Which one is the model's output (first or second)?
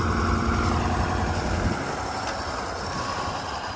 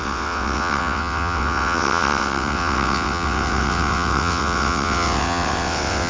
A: second